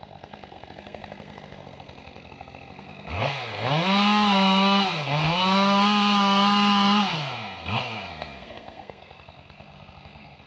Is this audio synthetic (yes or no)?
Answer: yes